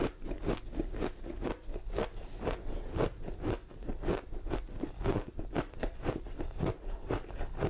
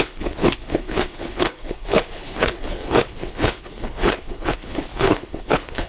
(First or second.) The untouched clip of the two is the first